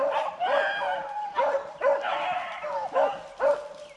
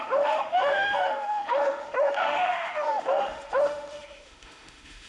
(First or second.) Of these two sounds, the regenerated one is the second